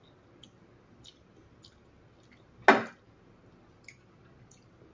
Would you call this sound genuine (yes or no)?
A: yes